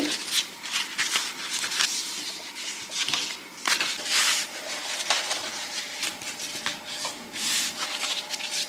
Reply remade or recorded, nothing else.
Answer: remade